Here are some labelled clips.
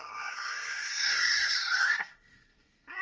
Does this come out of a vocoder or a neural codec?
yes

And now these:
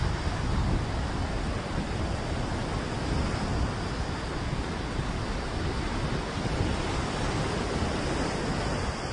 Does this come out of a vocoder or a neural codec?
no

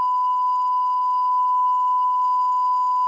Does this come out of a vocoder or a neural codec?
yes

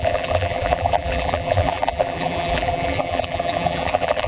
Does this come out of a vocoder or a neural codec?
yes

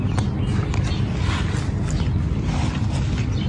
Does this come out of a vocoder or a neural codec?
no